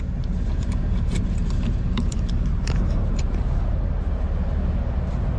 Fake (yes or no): yes